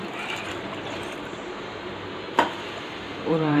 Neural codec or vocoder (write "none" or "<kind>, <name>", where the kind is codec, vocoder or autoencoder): vocoder, BigVGAN v2